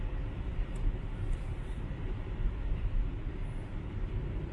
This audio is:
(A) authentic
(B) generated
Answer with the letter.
B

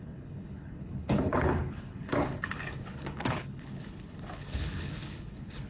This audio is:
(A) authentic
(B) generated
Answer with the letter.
B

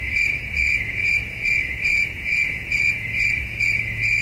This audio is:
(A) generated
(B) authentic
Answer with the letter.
A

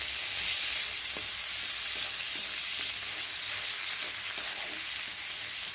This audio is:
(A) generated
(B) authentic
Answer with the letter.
B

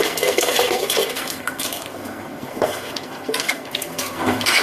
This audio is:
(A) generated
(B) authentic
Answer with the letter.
A